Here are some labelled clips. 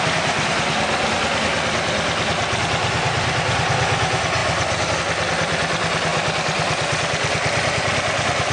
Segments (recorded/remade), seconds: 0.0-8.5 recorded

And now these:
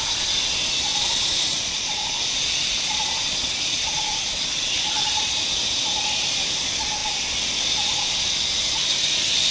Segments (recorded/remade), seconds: 0.0-0.9 recorded; 0.9-5.4 remade; 5.4-9.5 recorded

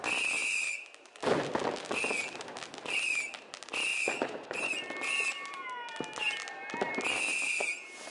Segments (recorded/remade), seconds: 0.0-3.9 recorded; 3.9-4.7 remade; 4.7-8.1 recorded

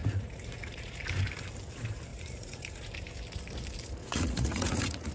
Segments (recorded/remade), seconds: 0.0-0.9 remade; 0.9-2.1 recorded; 2.1-2.9 remade; 2.9-4.0 recorded; 4.0-5.1 remade